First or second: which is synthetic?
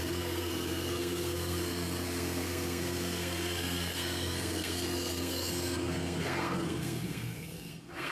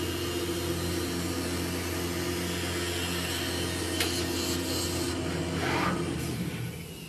first